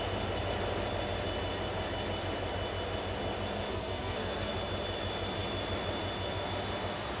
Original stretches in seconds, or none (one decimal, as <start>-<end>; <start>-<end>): 0.0-3.7; 4.5-7.2